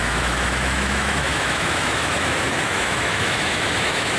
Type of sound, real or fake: fake